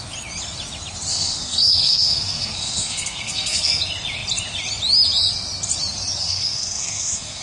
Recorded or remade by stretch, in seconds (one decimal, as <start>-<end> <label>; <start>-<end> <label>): 0.0-1.1 recorded; 1.1-3.8 remade; 3.8-6.2 recorded; 6.2-7.4 remade